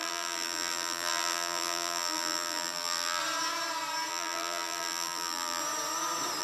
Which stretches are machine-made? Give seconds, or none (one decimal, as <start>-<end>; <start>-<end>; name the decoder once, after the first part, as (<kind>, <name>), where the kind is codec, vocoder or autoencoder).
0.0-3.2 (vocoder, BigVGAN v2); 4.1-5.6